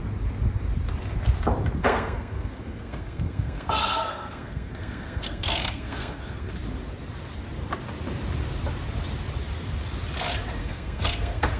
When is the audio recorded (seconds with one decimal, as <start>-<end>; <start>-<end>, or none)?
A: 0.0-1.8; 6.5-10.6